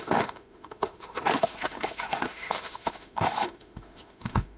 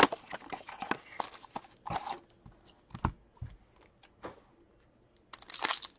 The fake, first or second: first